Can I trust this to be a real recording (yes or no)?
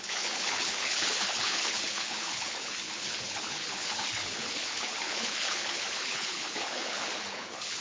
no